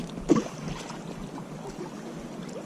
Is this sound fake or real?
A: real